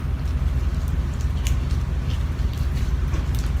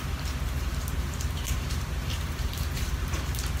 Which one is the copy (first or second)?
second